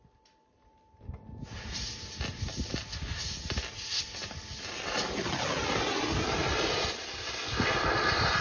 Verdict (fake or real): real